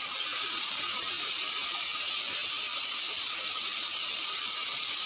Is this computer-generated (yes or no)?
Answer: yes